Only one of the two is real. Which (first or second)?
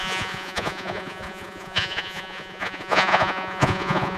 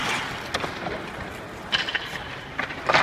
second